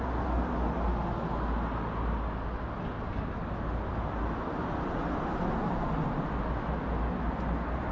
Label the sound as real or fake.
real